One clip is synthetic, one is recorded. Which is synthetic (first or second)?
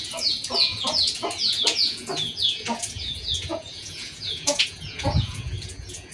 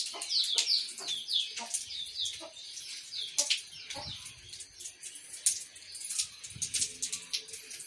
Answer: first